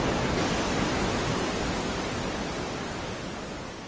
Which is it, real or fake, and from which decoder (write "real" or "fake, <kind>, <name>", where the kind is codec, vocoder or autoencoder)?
real